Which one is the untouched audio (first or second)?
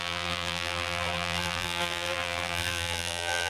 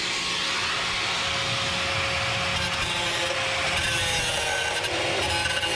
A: second